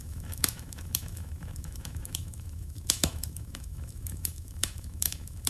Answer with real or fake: fake